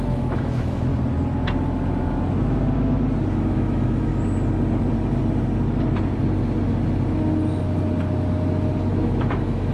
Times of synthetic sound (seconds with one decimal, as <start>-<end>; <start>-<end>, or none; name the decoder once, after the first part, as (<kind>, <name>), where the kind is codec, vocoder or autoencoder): 0.0-0.9 (autoencoder, DAC-VAE); 3.3-4.1; 8.9-9.7